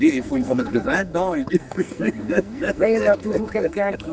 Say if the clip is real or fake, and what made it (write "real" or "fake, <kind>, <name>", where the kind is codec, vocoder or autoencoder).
fake, codec, SNAC